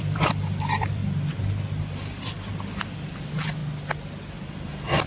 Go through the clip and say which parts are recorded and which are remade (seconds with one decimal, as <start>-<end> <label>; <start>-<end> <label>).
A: 0.0-1.0 remade; 1.0-1.8 recorded; 1.8-3.6 remade; 3.6-4.3 recorded; 4.3-5.1 remade